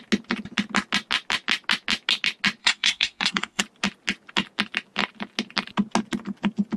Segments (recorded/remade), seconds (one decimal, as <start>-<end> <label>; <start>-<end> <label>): 0.0-2.6 recorded; 2.6-3.6 remade; 3.6-6.8 recorded